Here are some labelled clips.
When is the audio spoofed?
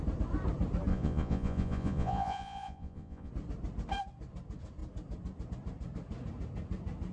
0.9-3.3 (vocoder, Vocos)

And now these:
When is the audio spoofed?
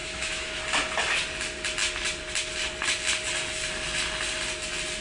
0.0-0.6 (autoencoder, DAC-VAE)